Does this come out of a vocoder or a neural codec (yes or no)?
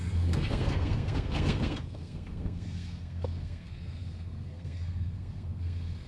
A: yes